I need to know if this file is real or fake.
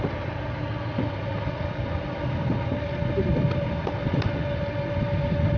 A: real